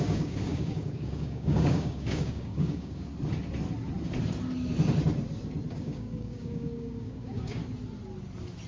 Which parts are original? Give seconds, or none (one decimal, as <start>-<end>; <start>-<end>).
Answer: 3.1-5.7; 7.6-8.7